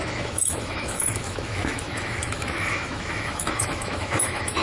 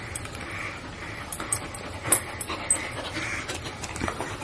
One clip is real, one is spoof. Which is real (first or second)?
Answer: second